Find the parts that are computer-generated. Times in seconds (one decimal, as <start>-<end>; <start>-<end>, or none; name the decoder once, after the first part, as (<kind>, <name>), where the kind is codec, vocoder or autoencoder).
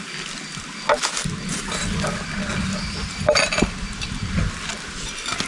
none